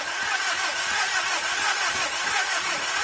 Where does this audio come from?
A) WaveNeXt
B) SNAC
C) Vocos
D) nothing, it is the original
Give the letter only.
C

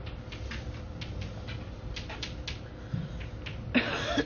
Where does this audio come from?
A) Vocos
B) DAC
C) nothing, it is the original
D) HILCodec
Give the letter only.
C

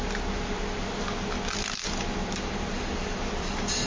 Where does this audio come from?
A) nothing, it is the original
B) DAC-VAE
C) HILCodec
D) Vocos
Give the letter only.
A